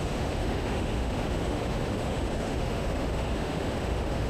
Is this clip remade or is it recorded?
remade